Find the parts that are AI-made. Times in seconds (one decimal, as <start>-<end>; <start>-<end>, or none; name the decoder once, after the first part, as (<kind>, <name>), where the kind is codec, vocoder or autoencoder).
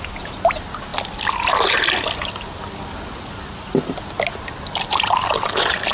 none